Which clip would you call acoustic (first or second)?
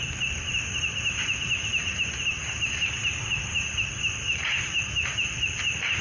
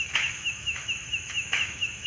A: first